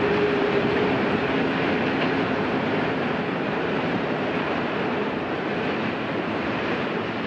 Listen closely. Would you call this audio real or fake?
fake